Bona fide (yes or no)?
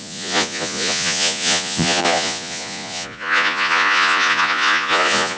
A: no